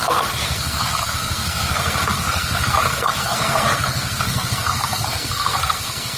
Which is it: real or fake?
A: fake